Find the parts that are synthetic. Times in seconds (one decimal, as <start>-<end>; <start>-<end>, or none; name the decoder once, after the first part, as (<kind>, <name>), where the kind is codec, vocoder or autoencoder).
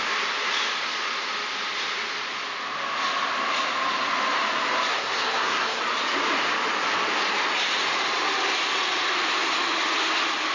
4.9-5.8 (codec, SNAC)